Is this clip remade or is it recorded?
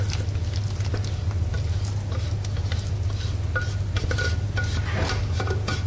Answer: recorded